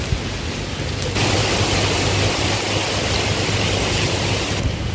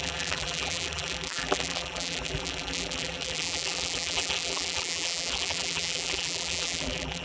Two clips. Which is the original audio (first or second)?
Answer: first